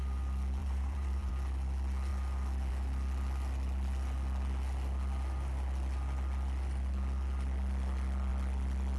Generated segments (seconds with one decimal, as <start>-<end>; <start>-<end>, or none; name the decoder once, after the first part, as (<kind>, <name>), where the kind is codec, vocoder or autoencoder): 0.6-1.3 (vocoder, BigVGAN v2)